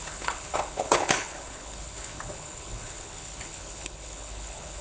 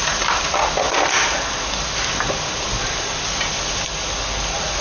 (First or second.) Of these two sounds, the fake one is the first